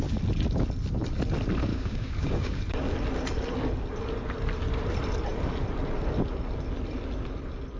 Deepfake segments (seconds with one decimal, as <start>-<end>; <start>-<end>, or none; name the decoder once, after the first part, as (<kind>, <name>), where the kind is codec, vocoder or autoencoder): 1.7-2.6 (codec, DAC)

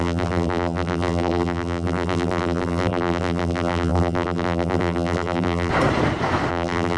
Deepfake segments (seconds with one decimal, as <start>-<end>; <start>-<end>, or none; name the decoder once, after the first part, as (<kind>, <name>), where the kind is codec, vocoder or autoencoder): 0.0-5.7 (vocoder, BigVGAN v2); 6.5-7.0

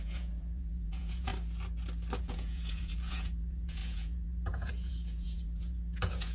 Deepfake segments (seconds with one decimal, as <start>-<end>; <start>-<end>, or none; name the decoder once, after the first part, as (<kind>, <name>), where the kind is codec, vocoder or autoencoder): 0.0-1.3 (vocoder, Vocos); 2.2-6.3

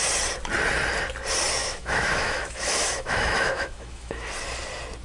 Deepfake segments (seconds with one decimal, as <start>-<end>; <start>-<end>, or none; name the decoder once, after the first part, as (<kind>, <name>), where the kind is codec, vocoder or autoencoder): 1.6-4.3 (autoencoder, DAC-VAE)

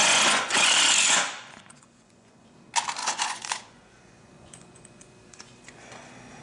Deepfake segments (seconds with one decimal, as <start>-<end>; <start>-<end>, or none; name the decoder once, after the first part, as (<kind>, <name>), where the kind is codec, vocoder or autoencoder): 0.0-2.5 (vocoder, Vocos); 3.0-6.4